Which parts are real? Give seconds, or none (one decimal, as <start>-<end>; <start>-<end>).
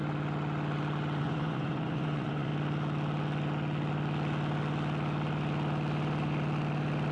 0.0-1.2; 2.5-7.1